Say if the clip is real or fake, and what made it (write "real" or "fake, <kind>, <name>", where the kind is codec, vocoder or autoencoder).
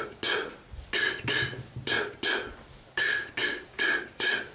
real